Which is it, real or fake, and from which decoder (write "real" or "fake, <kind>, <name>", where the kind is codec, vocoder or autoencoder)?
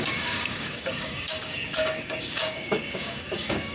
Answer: fake, codec, DAC